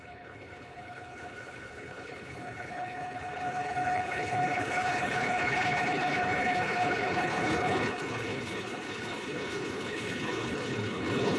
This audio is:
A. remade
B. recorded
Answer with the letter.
A